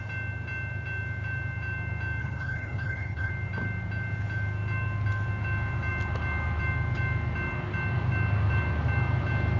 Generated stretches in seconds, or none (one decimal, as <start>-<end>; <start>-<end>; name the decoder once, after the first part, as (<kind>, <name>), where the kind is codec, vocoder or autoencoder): 2.2-3.3 (codec, HILCodec)